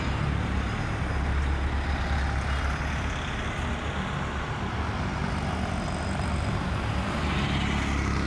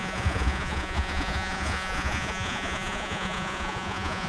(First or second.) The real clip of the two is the first